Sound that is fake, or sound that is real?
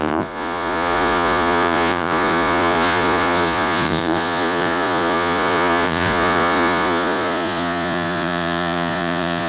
fake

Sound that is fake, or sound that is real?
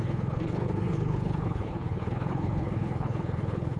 fake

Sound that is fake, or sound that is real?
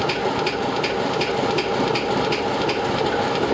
real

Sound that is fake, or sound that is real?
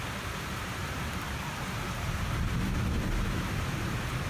fake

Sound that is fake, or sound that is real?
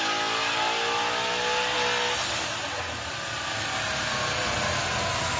real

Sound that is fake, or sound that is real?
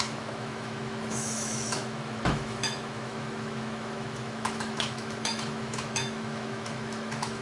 fake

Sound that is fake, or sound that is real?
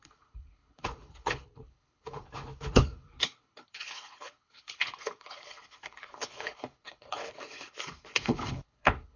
fake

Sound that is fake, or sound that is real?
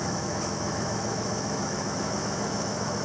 fake